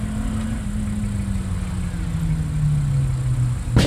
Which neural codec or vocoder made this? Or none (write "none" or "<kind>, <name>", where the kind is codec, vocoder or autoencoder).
none